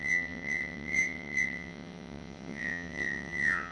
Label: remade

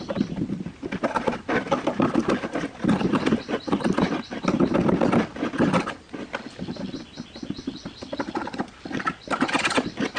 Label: recorded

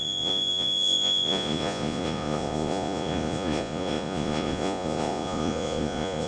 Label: remade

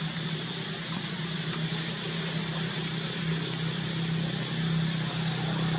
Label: recorded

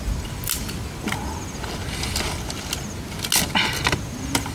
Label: recorded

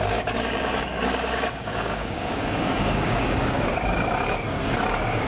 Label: remade